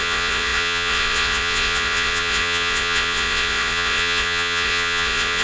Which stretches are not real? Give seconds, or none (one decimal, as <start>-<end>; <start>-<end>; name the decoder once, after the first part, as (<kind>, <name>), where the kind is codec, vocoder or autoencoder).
0.0-5.4 (vocoder, Vocos)